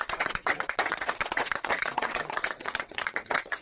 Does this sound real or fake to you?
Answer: fake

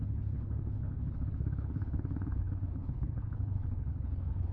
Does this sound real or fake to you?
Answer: fake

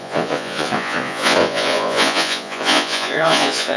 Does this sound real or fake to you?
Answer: fake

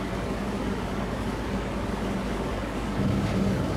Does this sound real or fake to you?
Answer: fake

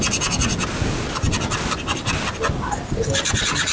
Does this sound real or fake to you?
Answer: real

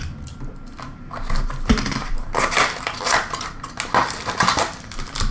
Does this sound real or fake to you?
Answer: real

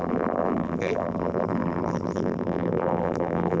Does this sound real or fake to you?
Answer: fake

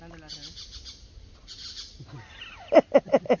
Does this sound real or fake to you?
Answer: real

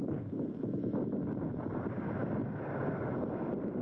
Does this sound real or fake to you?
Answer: real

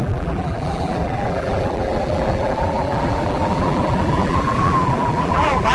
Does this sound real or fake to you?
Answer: fake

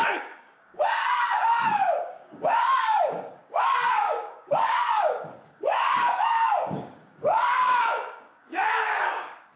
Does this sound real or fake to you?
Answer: fake